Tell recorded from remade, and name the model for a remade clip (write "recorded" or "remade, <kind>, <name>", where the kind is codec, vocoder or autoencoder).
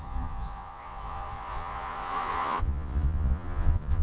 remade, vocoder, Vocos